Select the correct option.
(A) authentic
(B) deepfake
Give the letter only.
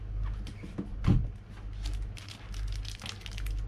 A